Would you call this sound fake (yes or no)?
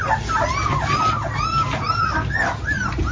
no